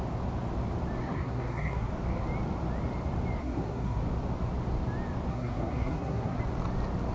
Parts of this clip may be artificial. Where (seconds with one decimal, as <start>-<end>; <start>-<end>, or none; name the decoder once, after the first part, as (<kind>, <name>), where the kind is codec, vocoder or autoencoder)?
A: 1.0-1.9 (codec, SNAC); 3.4-4.0; 5.3-6.4